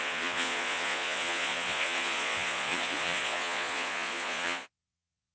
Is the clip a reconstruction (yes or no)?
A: yes